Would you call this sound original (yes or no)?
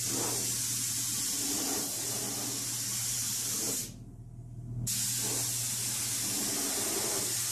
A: yes